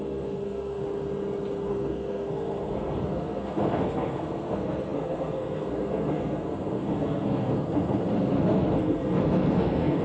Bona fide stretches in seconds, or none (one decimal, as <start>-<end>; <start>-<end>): 0.8-1.7